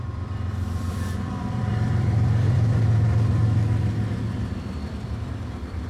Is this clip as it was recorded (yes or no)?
no